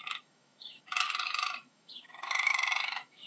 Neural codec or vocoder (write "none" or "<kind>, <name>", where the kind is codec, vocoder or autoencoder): autoencoder, DAC-VAE